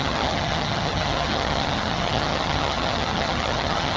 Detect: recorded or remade remade